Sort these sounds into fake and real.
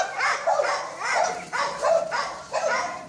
real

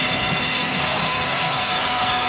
fake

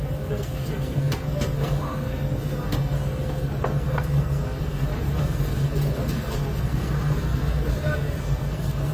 fake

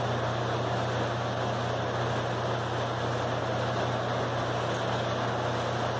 real